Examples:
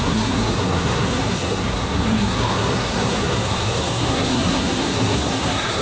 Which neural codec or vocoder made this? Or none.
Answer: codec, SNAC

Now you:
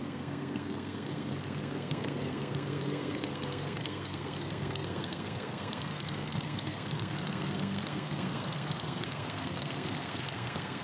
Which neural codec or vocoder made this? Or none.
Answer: codec, SNAC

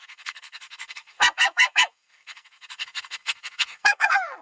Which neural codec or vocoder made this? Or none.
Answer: codec, SNAC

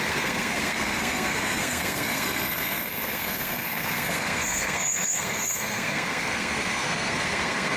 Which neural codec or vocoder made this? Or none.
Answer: codec, SNAC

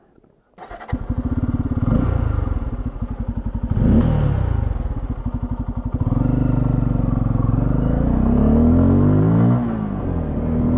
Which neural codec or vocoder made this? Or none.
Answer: none